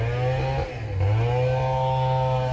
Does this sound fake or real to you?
real